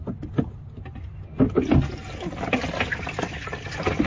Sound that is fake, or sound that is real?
real